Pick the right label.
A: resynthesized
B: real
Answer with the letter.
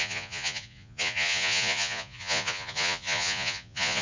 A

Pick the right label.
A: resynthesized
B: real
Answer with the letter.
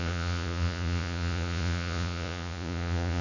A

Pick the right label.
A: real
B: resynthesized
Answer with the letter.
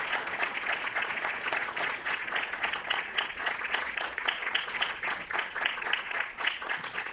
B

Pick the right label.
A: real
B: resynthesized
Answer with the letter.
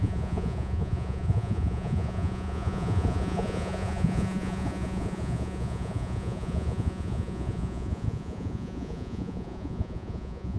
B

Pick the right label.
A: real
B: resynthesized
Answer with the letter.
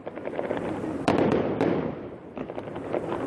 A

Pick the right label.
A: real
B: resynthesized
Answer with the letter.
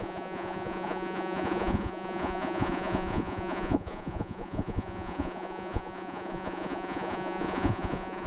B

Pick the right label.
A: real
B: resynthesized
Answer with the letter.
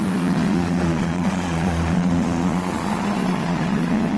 B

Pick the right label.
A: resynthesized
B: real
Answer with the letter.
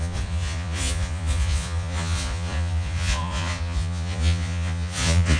A